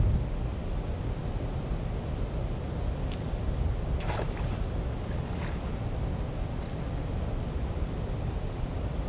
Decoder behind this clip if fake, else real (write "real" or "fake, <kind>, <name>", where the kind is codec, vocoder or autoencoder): real